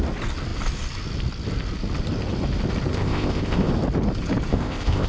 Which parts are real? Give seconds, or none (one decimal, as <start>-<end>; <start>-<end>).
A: 0.0-2.9; 3.7-4.5